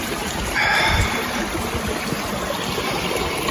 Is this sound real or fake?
real